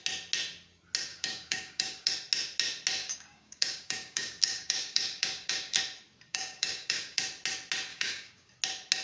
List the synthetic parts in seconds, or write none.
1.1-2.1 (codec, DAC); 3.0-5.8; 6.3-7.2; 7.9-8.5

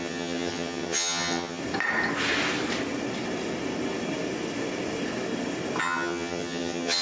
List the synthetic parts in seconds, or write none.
0.0-1.6 (vocoder, HiFi-GAN); 5.8-7.0

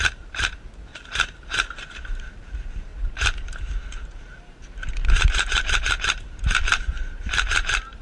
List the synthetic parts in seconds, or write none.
0.0-2.9 (vocoder, BigVGAN v2); 4.4-8.0

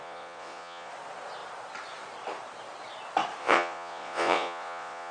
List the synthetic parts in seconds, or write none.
0.0-0.9 (vocoder, Vocos); 3.4-5.1

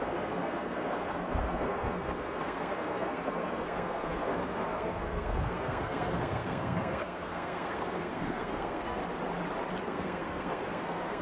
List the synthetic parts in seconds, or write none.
0.0-9.0 (codec, SNAC); 9.8-11.2

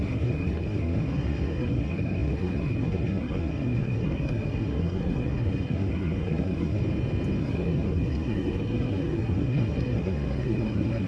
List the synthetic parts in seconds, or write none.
0.0-6.8 (codec, SNAC); 7.4-11.1